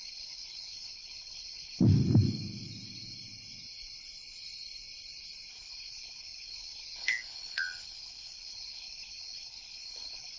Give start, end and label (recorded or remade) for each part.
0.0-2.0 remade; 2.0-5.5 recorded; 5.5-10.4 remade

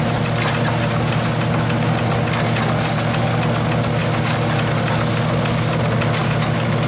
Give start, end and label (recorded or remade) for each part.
0.0-6.9 recorded

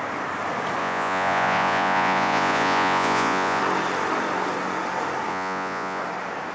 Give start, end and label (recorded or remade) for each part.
0.0-0.8 recorded; 0.8-3.6 remade; 3.6-5.3 recorded; 5.3-6.0 remade; 6.0-6.5 recorded